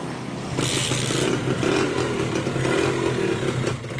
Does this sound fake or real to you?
real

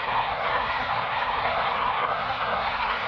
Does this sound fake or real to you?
fake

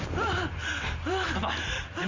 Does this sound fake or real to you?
fake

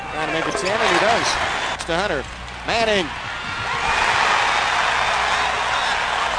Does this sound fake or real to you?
real